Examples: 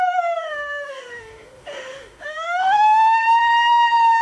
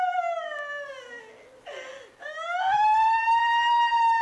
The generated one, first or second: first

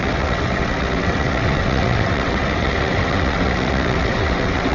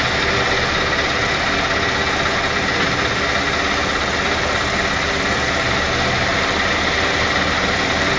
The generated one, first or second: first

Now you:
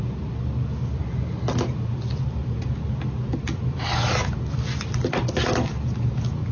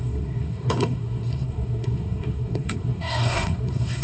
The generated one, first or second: second